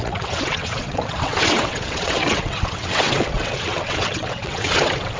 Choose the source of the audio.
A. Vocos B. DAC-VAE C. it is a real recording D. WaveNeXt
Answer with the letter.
D